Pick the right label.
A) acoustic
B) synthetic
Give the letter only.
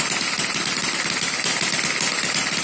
A